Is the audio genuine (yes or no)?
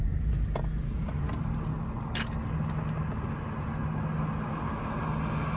yes